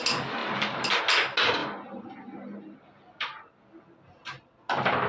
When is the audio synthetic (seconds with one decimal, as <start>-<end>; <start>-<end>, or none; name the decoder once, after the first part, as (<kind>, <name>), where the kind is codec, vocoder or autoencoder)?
0.4-1.0 (vocoder, BigVGAN v2)